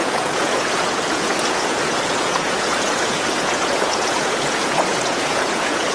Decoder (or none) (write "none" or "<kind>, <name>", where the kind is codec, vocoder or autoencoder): vocoder, Vocos